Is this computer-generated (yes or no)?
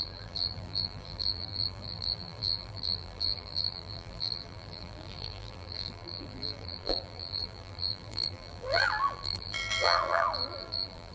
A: yes